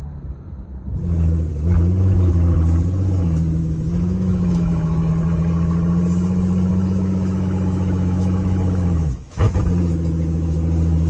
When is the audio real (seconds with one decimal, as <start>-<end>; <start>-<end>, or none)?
0.0-3.6; 5.1-6.7; 9.5-11.1